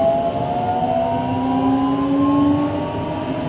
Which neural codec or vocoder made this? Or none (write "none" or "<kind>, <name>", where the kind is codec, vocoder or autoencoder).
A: none